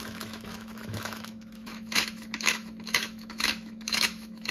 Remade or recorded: remade